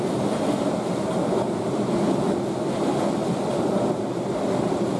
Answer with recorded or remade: recorded